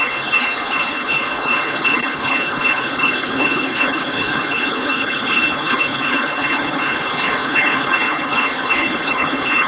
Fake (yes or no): yes